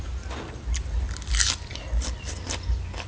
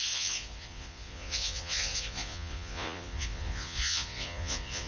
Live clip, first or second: first